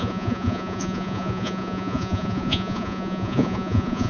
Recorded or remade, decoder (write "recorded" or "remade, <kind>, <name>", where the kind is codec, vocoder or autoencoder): remade, vocoder, Vocos